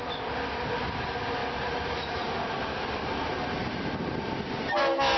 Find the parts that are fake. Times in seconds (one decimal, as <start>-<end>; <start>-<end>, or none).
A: none